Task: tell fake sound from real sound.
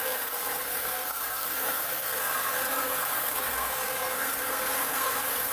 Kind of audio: fake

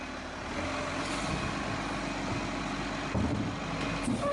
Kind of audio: real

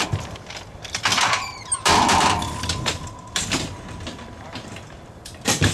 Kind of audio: fake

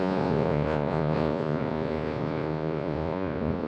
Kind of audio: fake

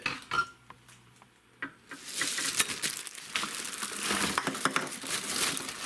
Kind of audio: real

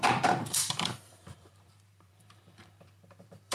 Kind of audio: fake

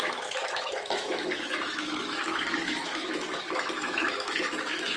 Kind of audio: fake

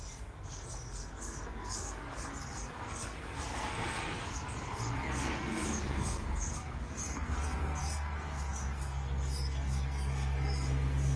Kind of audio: fake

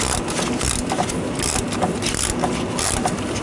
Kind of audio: real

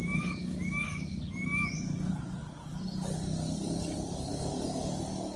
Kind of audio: real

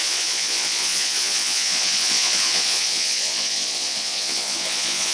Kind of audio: fake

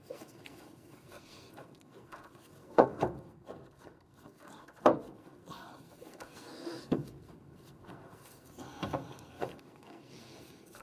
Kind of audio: fake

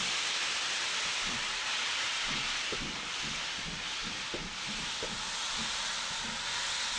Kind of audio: real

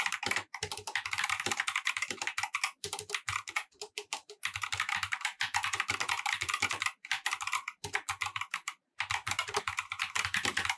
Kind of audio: fake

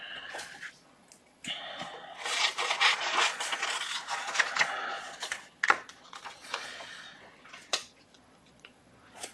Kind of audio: fake